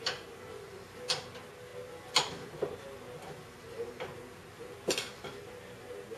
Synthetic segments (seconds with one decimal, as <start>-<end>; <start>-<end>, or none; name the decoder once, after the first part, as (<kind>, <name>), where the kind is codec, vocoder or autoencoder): none